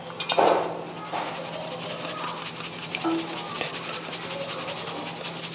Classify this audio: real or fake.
real